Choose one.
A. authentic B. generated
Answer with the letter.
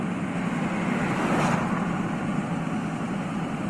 A